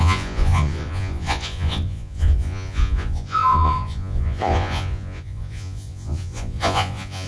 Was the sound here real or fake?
fake